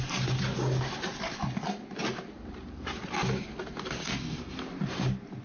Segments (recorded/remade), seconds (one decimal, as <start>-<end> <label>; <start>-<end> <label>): 0.0-5.4 recorded